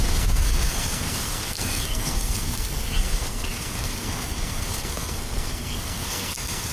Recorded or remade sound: remade